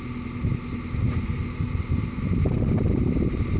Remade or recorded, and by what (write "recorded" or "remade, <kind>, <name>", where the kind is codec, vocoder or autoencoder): recorded